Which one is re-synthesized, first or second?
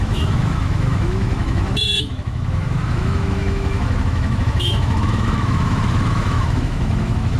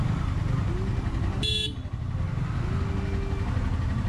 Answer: first